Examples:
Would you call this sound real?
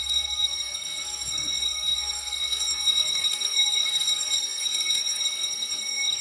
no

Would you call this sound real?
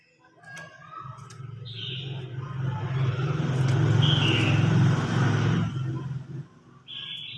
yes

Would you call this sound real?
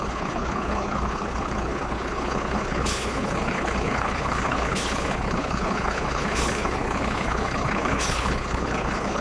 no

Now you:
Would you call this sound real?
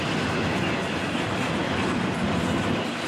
yes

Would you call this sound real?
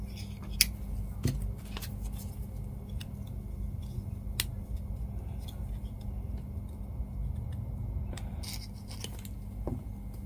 yes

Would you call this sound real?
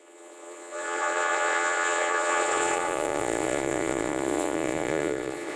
no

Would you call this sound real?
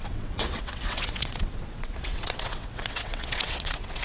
no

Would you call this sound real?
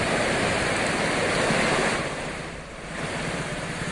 yes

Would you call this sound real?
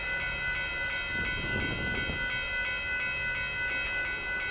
yes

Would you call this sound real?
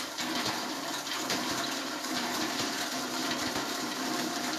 no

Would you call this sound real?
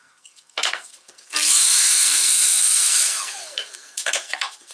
no